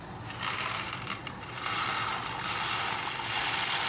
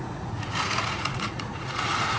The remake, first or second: second